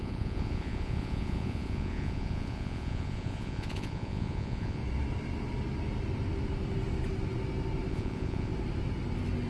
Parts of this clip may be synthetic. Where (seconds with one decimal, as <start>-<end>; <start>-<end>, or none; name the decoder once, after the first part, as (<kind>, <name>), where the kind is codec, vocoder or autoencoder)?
0.0-4.8 (vocoder, Vocos); 7.9-8.5